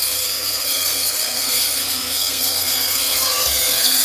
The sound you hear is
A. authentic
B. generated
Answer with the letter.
B